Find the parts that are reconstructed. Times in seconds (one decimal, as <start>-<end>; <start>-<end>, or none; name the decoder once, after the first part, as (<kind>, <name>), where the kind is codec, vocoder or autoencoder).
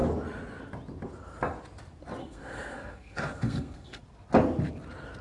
2.2-4.0 (codec, SNAC)